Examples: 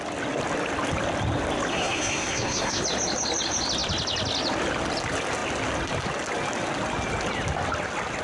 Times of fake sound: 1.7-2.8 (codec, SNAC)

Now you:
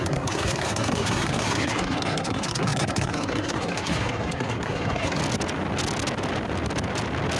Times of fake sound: 0.0-5.2 (codec, SNAC)